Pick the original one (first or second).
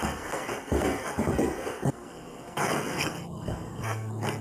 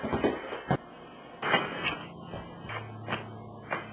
second